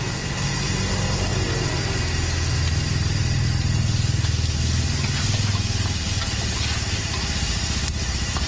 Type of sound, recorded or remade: recorded